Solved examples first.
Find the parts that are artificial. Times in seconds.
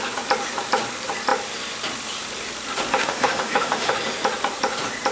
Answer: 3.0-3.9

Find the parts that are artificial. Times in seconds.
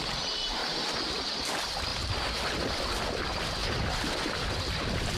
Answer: 0.6-1.4; 1.9-5.2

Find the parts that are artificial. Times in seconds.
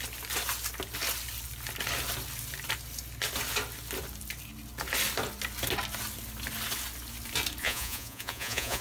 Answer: 7.6-8.8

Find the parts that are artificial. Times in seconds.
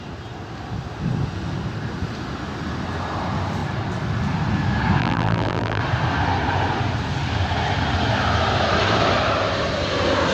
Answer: 5.0-5.8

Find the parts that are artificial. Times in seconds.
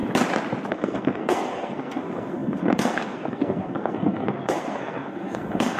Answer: 0.7-5.8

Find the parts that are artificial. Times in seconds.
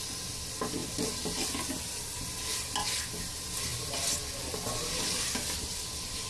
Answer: none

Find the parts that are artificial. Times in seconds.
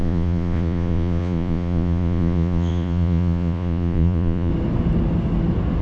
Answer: 0.0-4.5